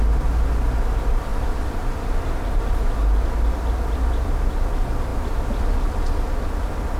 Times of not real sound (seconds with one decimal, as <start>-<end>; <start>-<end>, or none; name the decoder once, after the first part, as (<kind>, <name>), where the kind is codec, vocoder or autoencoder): none